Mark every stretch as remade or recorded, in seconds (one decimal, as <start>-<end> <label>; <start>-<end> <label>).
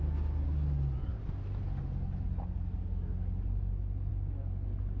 0.0-5.0 recorded